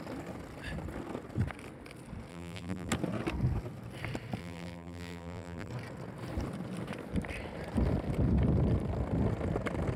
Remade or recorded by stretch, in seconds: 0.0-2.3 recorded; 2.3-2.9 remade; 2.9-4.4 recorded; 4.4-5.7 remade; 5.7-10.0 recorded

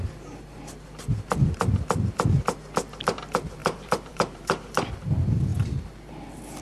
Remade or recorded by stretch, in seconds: 0.0-3.6 recorded; 3.6-4.7 remade; 4.7-6.6 recorded

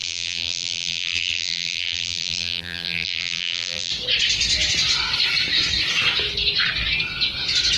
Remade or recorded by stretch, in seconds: 0.0-3.9 remade; 3.9-7.8 recorded

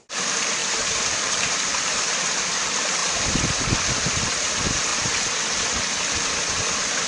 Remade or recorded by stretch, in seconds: 0.0-0.6 recorded; 0.6-2.3 remade; 2.3-3.0 recorded; 3.0-3.6 remade; 3.6-4.9 recorded; 4.9-5.4 remade; 5.4-7.1 recorded